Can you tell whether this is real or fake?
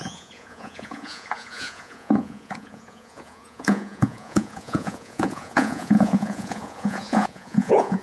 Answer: fake